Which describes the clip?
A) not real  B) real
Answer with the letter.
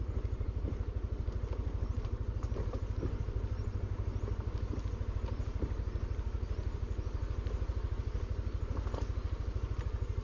B